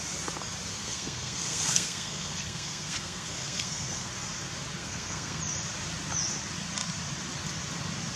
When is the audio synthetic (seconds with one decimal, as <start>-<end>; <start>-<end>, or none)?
0.7-4.1; 4.8-5.4